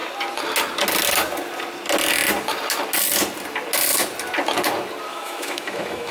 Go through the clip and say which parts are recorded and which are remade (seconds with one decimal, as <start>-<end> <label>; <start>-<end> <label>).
0.0-5.1 recorded; 5.1-6.1 remade